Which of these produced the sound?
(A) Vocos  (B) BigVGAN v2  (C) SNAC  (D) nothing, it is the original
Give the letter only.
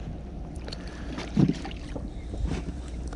B